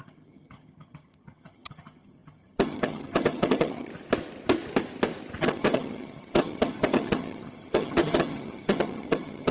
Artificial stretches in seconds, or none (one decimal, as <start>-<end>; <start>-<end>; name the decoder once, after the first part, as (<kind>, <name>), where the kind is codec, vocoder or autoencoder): 0.0-3.9 (vocoder, HiFi-GAN); 5.4-9.5